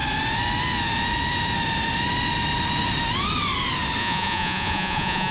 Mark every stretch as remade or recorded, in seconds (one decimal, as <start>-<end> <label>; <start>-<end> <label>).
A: 0.0-4.0 recorded; 4.0-5.3 remade